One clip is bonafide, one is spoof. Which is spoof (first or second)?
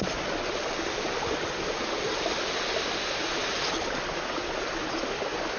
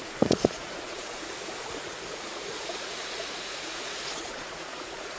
second